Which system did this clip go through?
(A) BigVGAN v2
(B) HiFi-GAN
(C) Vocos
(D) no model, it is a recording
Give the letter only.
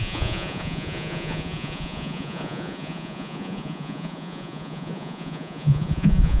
C